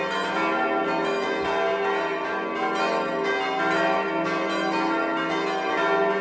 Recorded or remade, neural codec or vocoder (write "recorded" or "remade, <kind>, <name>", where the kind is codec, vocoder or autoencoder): recorded